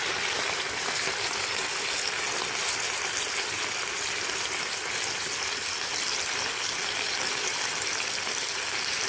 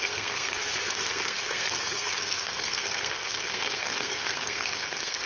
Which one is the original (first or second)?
first